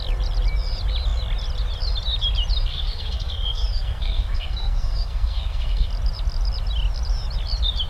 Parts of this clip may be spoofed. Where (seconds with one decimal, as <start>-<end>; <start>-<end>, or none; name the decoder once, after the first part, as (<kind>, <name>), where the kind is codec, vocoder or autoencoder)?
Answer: 2.7-5.9 (codec, SNAC)